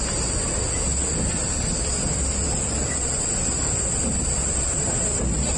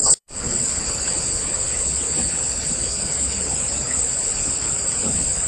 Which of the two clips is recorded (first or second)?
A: first